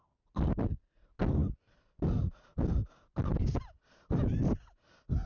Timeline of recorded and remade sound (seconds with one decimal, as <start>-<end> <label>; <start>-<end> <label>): 0.0-5.3 recorded